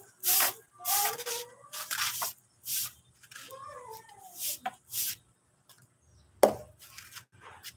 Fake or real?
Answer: real